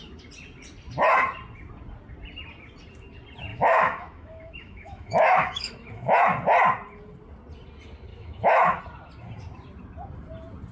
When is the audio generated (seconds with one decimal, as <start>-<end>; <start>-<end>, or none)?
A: 3.5-6.2; 8.1-8.8